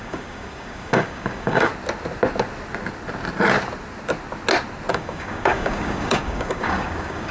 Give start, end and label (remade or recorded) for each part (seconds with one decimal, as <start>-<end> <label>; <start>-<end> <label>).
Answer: 0.0-1.7 remade; 1.7-4.9 recorded; 4.9-7.3 remade